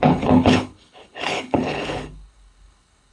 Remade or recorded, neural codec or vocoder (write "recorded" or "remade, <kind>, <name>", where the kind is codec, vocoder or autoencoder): remade, codec, HILCodec